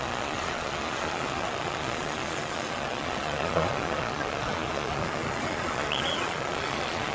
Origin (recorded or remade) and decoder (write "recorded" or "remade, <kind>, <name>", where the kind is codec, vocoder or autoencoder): remade, vocoder, Vocos